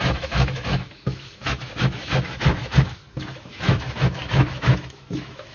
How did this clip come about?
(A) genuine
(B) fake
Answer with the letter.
B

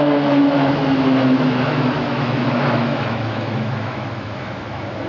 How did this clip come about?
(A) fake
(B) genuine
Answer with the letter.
A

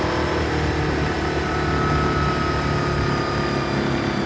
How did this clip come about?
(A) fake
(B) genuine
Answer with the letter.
B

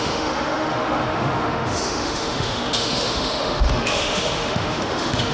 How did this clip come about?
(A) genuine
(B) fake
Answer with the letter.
B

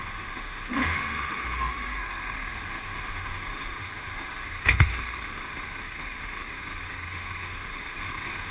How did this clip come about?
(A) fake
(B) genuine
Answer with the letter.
A